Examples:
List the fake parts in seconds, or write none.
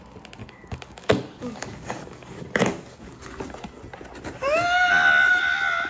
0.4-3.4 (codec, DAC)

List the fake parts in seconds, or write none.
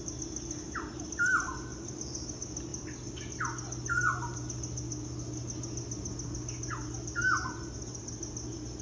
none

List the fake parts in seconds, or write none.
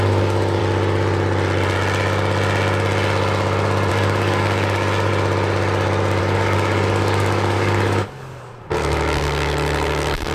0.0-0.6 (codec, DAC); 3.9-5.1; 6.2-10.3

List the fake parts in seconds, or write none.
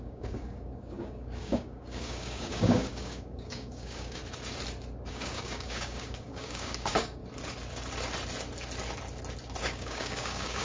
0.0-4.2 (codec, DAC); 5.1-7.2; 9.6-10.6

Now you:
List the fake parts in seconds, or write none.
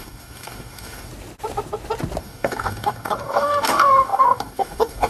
0.0-1.1 (codec, DAC); 2.2-5.1